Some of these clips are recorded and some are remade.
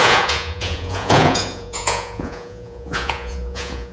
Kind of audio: remade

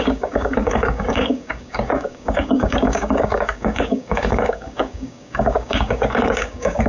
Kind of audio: remade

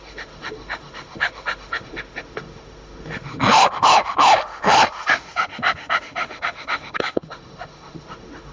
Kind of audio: remade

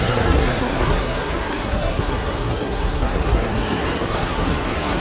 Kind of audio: remade